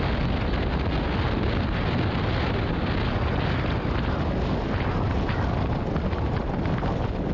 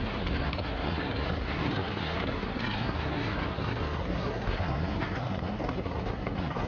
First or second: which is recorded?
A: first